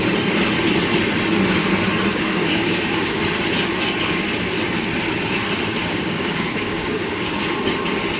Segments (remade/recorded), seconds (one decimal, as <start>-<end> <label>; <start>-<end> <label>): 0.0-2.1 recorded; 2.1-3.2 remade; 3.2-5.8 recorded; 5.8-7.4 remade; 7.4-8.2 recorded